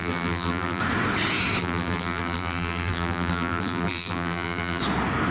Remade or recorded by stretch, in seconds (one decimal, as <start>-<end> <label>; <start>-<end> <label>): 0.0-0.8 remade; 0.8-1.6 recorded; 1.6-4.8 remade; 4.8-5.3 recorded